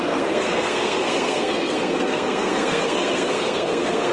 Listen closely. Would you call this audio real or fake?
fake